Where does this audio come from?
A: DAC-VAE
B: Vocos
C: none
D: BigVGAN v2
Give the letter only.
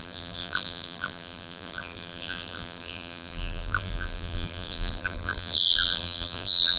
D